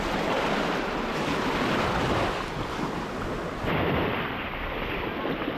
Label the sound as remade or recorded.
recorded